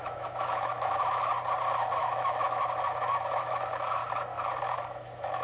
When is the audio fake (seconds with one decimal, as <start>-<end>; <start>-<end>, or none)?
0.0-1.3; 2.0-4.0; 4.6-5.4